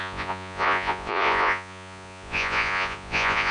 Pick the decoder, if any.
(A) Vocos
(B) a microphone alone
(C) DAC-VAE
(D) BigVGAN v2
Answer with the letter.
A